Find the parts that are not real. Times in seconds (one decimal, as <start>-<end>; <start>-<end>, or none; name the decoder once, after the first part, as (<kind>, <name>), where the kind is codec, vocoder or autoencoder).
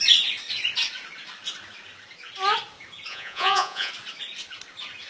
3.1-3.9 (vocoder, Vocos)